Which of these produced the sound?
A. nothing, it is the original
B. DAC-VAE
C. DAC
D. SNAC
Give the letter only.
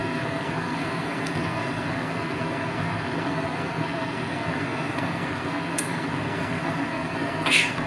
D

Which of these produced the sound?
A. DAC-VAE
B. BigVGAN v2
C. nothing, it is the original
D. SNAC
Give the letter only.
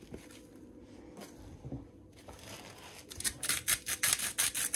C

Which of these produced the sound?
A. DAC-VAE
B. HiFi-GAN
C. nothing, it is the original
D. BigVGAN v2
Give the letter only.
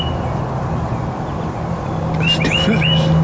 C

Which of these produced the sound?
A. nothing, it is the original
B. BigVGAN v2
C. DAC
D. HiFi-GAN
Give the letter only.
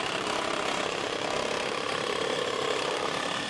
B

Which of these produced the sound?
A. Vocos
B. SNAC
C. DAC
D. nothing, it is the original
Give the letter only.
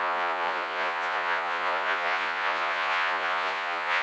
A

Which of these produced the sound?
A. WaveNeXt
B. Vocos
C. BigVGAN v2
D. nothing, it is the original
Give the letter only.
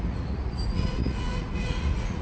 B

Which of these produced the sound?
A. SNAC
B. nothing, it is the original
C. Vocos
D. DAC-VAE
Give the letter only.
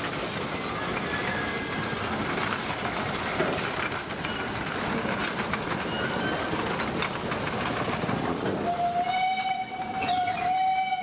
B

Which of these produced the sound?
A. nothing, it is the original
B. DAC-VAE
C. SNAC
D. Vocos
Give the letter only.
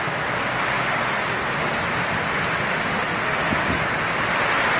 A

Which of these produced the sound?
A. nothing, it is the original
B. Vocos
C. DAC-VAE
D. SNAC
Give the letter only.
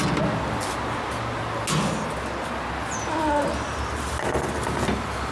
A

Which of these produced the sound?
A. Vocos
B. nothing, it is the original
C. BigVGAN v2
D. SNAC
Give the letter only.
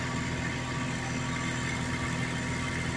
B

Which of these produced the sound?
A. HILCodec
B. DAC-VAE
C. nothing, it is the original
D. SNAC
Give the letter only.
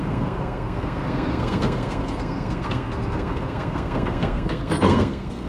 D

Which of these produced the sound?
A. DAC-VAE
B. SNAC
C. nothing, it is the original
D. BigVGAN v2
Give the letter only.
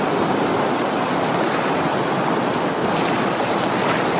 C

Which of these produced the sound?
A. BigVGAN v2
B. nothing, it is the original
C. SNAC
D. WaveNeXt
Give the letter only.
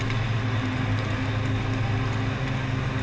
B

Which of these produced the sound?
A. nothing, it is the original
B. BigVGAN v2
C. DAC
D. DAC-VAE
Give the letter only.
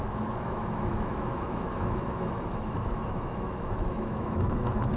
D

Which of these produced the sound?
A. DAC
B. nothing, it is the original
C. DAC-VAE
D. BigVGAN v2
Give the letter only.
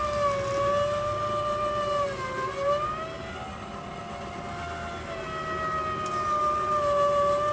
B